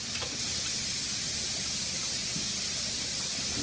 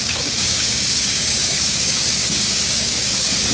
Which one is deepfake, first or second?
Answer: second